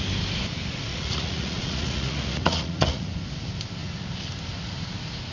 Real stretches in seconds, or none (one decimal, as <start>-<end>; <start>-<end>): 0.0-0.9; 3.1-5.3